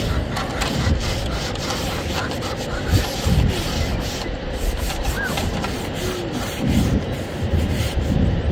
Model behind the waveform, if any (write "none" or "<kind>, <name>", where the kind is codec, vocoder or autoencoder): none